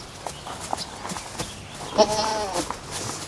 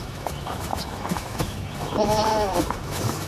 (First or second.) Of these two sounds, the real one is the first